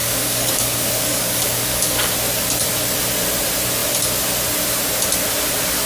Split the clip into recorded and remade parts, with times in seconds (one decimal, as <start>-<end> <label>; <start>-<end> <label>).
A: 0.0-2.1 remade; 2.1-5.9 recorded